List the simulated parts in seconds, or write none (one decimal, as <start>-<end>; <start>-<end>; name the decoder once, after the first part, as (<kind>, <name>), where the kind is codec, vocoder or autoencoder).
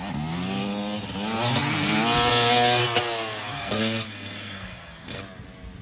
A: 3.5-5.2 (codec, SNAC)